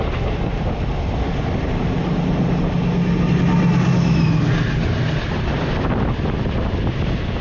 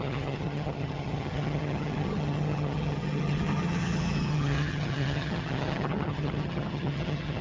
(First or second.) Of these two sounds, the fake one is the second